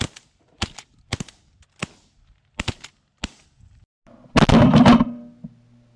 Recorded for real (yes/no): yes